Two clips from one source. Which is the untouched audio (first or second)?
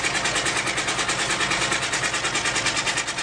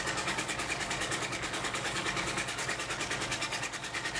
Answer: first